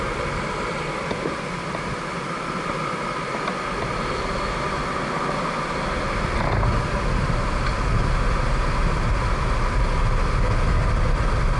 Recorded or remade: recorded